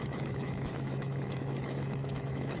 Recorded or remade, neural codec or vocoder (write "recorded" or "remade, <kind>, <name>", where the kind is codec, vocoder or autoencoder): remade, autoencoder, DAC-VAE